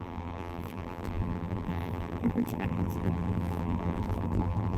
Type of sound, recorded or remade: remade